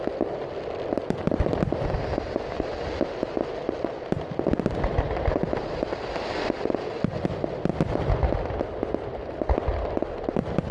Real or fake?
real